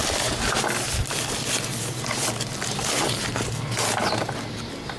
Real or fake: real